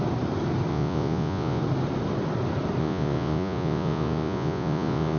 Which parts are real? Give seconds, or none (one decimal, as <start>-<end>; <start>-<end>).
0.0-0.7; 1.6-2.8